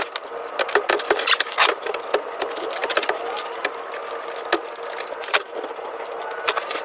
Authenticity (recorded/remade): recorded